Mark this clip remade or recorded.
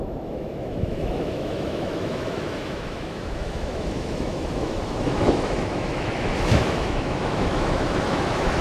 remade